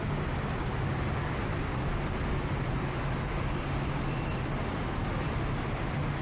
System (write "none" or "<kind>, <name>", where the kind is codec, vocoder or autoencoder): none